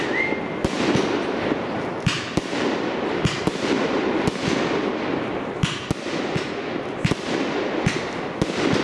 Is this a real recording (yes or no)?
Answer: yes